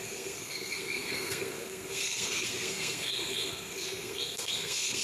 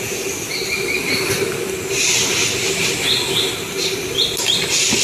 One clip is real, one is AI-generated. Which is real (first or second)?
second